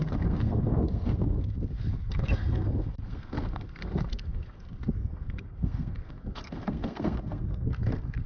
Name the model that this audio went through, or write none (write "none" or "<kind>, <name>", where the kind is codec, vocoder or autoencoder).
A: codec, SNAC